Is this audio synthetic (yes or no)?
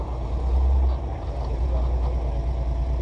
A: no